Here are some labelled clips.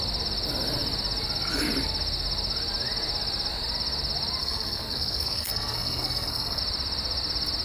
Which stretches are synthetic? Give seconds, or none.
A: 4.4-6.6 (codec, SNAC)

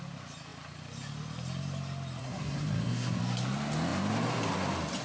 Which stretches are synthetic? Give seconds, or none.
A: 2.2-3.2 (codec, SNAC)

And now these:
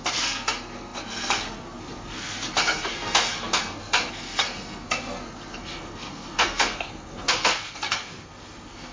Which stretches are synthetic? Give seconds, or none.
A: 0.0-8.9 (codec, SNAC)

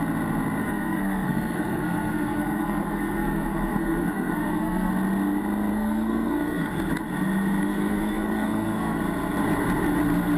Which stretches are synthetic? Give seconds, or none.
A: 0.6-4.9 (codec, SNAC); 5.7-6.7; 7.6-9.0

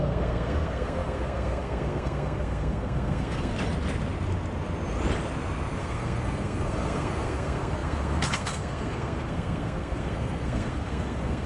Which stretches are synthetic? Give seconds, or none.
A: 0.0-3.5 (codec, SNAC); 5.8-11.5